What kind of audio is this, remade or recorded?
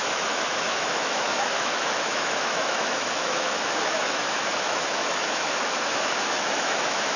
remade